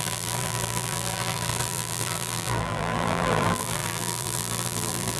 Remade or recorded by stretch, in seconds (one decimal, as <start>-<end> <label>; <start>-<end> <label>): 0.0-5.2 remade